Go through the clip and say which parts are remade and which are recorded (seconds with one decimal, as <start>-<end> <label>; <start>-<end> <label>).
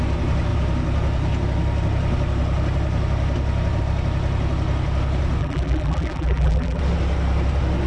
0.0-5.4 recorded; 5.4-6.8 remade; 6.8-7.9 recorded